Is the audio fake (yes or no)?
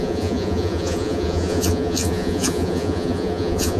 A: yes